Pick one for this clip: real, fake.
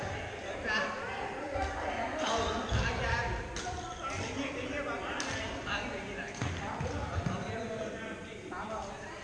real